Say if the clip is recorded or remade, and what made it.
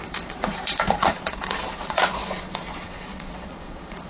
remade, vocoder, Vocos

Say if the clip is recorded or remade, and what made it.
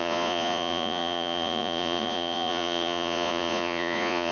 remade, vocoder, Vocos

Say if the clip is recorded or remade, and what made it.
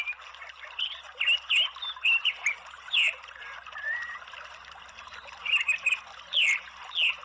recorded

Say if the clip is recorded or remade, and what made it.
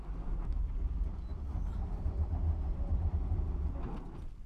recorded